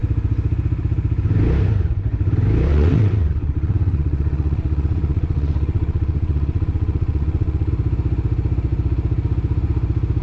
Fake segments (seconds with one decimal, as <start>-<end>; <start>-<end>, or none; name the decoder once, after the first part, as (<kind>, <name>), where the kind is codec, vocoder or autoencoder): 2.7-7.7 (vocoder, WaveNeXt)